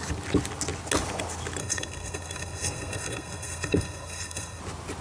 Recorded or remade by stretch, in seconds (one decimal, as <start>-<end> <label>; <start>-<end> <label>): 0.0-1.6 recorded; 1.6-4.6 remade; 4.6-5.0 recorded